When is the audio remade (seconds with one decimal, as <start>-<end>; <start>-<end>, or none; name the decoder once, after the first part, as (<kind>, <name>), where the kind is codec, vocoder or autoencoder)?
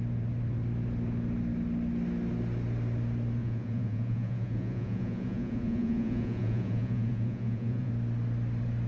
3.4-7.9 (vocoder, Vocos)